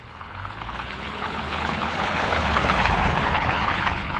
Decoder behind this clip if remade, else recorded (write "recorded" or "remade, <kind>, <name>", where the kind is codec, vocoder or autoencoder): remade, codec, HILCodec